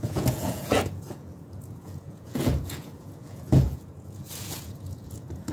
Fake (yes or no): yes